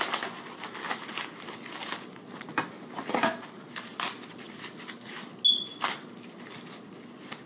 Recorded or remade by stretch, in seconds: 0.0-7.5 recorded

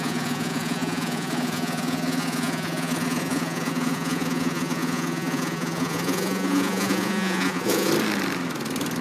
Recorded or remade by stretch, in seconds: 0.0-7.9 remade; 7.9-9.0 recorded

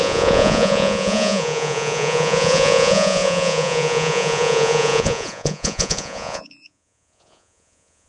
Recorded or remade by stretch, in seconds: 0.0-8.1 remade

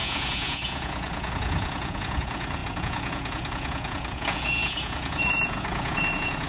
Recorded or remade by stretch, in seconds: 0.0-6.5 remade

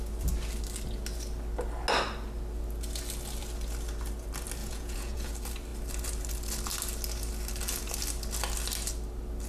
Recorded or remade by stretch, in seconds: 0.0-4.6 recorded; 4.6-5.3 remade; 5.3-9.5 recorded

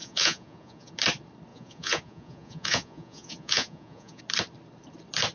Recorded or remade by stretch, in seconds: 0.0-0.9 remade; 0.9-1.5 recorded; 1.5-4.2 remade; 4.2-5.3 recorded

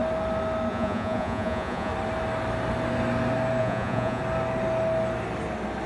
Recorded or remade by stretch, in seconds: 0.0-0.7 recorded; 0.7-1.9 remade; 1.9-3.6 recorded; 3.6-4.2 remade; 4.2-5.9 recorded